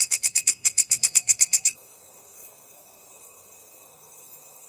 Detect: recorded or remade remade